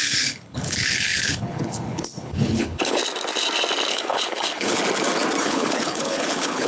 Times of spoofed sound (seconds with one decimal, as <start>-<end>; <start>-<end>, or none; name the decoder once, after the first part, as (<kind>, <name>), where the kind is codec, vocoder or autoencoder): 0.0-3.0 (codec, HILCodec); 3.9-4.8; 5.4-6.7